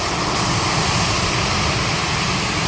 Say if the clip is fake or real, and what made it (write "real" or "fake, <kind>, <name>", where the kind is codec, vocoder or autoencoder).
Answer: real